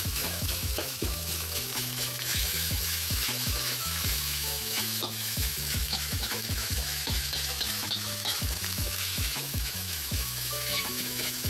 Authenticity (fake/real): fake